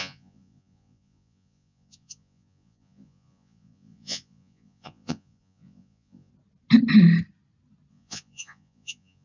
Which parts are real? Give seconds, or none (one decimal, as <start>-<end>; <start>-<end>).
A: 6.3-7.9